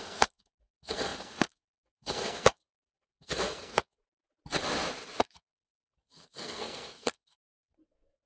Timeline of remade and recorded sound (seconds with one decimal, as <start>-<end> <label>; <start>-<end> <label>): 0.0-4.0 remade; 4.0-5.2 recorded; 5.2-8.3 remade